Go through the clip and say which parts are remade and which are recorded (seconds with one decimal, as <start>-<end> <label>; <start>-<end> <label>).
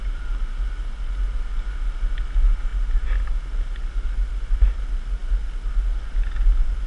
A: 0.0-6.9 recorded